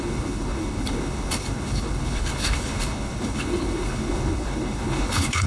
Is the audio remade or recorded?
remade